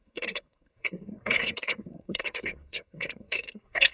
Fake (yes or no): yes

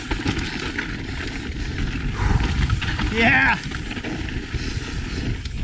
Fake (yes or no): no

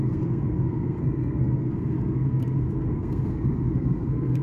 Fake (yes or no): yes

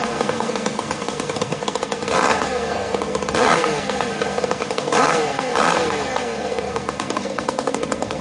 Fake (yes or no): yes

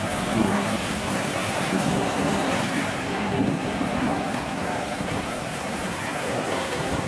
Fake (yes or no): yes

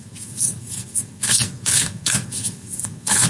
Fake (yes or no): yes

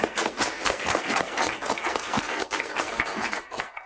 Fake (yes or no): yes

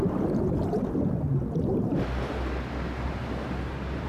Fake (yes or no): no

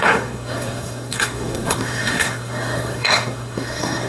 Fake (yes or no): yes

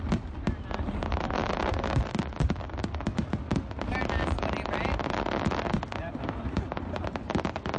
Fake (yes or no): no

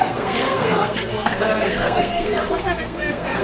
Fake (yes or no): yes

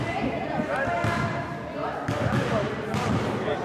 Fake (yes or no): no